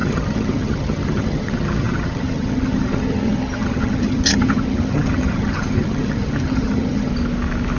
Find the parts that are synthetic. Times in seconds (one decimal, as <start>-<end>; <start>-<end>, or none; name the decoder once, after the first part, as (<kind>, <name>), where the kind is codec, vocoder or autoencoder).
0.0-7.1 (vocoder, HiFi-GAN)